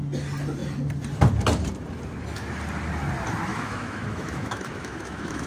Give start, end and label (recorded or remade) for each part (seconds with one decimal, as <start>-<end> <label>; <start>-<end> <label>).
0.0-3.5 recorded; 3.5-5.5 remade

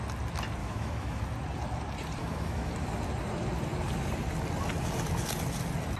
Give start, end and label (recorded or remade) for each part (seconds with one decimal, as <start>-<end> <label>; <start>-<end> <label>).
0.0-0.6 recorded; 0.6-1.2 remade; 1.2-2.2 recorded; 2.2-2.7 remade; 2.7-6.0 recorded

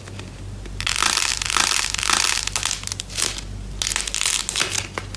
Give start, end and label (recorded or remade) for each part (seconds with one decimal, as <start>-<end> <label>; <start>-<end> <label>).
0.0-5.2 recorded

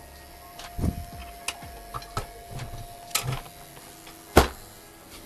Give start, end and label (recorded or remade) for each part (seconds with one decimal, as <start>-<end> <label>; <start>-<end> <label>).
0.0-5.3 recorded

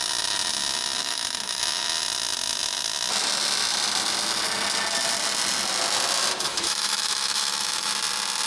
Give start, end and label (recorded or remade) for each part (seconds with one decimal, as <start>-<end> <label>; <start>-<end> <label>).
0.0-1.0 recorded; 1.0-1.6 remade; 1.6-6.5 recorded; 6.5-7.9 remade; 7.9-8.5 recorded

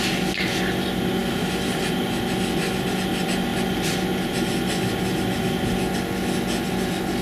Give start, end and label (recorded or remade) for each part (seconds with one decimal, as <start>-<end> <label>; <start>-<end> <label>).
0.0-7.2 recorded

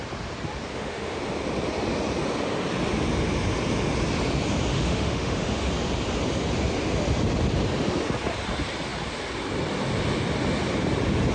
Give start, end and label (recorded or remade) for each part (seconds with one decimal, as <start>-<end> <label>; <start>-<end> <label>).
0.0-0.7 recorded; 0.7-1.2 remade; 1.2-4.7 recorded; 4.7-5.7 remade; 5.7-11.3 recorded

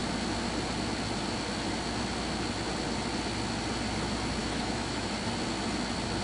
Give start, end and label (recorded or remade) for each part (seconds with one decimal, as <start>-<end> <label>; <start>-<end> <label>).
0.0-4.4 recorded; 4.4-5.1 remade; 5.1-6.2 recorded